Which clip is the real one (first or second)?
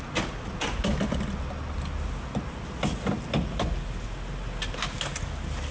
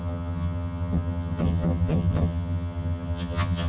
first